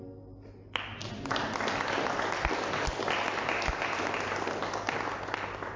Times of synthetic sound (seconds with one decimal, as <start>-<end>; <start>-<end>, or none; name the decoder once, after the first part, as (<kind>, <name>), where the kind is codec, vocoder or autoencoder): none